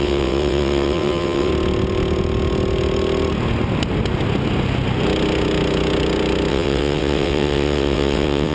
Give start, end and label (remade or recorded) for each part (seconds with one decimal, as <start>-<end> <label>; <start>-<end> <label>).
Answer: 0.0-1.5 remade; 1.5-6.5 recorded; 6.5-8.5 remade